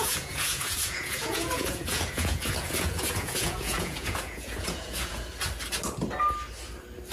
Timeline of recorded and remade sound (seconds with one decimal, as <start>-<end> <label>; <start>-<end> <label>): 0.0-5.4 remade; 5.4-7.1 recorded